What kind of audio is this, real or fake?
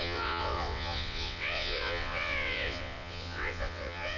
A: fake